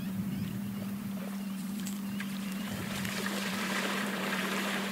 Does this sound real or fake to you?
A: fake